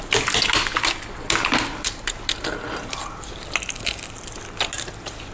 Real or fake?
real